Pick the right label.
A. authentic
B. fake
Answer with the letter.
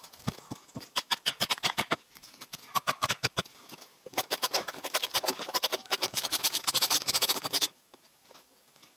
B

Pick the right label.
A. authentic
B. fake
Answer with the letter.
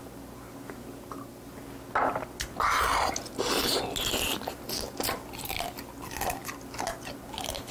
A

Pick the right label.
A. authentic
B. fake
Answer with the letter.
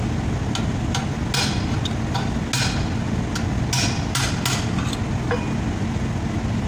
A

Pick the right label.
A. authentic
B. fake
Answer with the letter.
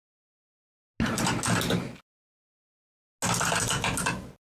A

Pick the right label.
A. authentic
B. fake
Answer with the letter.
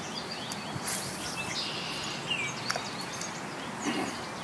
A